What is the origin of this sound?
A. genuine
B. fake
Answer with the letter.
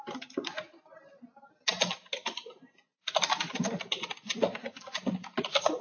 A